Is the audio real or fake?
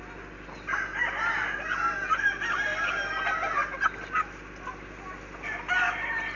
real